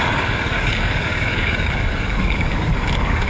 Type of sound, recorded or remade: remade